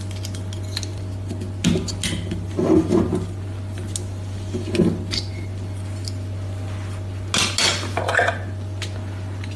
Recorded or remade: recorded